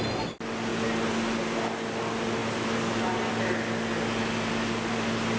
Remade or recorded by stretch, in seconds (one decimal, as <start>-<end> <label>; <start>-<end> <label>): 0.0-5.4 recorded